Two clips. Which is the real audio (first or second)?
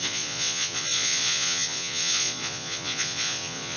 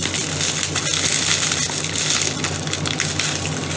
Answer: second